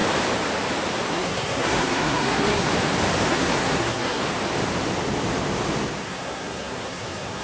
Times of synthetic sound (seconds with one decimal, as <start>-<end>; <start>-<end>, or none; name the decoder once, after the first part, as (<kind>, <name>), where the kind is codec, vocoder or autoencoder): 1.1-2.7 (codec, SNAC); 3.3-4.2; 6.0-7.4